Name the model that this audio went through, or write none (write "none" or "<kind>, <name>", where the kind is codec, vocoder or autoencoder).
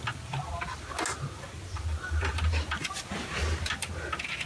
none